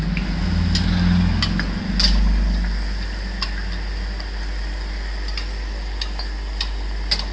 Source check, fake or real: real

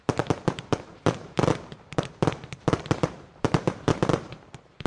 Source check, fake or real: fake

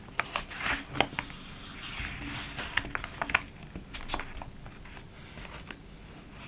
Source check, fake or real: real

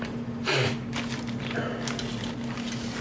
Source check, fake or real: real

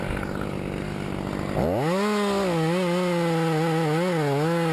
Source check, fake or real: real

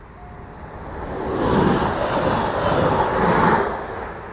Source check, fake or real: real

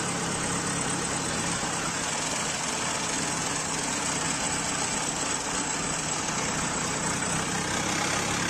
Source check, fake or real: real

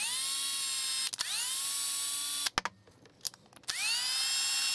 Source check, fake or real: real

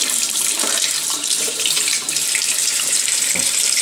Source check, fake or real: fake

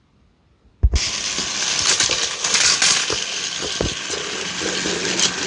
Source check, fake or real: real